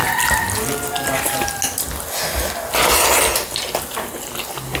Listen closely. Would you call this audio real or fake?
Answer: real